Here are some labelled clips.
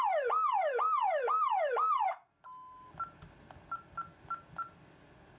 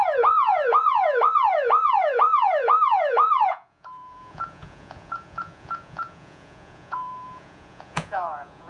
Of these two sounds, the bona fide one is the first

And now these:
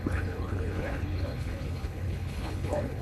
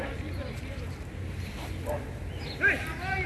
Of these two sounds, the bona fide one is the second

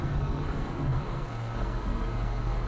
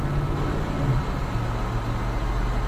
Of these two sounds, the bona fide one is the second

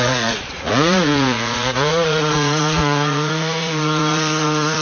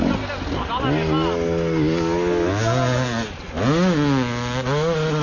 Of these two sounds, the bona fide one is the second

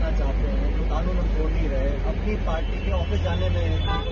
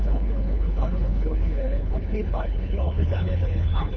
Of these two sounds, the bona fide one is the first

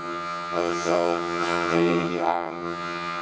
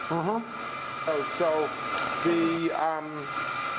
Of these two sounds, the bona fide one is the second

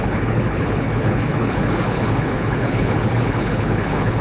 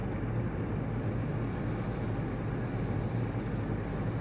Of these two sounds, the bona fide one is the second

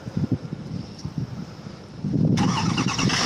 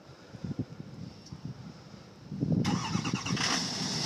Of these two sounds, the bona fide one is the second